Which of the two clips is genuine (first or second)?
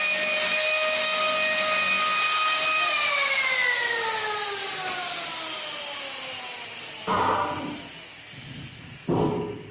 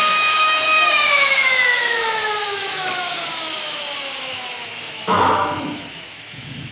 first